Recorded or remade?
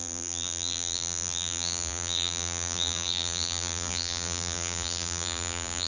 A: remade